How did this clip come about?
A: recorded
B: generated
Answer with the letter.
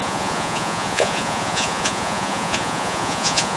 B